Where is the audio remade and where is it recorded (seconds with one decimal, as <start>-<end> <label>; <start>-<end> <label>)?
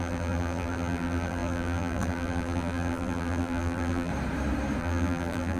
0.0-4.1 remade; 4.1-4.8 recorded; 4.8-5.6 remade